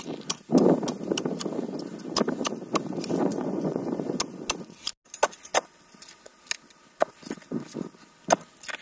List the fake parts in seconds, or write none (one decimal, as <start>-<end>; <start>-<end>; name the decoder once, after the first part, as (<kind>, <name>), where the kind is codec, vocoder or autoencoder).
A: 3.3-4.2 (vocoder, Vocos)